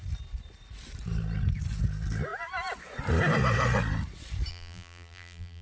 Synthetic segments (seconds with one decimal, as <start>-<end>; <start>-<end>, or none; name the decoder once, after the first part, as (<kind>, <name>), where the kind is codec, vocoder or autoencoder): 4.5-5.6 (vocoder, BigVGAN v2)